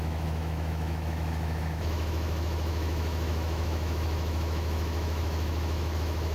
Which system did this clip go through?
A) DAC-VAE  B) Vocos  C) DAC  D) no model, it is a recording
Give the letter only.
A